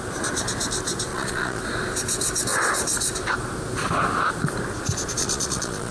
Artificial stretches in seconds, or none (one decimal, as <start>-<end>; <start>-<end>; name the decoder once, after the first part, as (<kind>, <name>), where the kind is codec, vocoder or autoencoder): 1.1-1.6 (vocoder, Vocos); 5.2-5.9